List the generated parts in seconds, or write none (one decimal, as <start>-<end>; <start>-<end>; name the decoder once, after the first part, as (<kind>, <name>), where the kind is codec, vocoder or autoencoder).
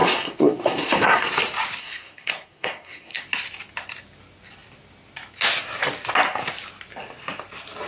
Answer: 0.0-1.3 (codec, SNAC); 1.8-3.2